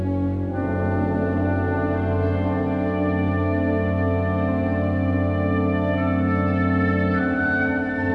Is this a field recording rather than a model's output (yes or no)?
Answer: yes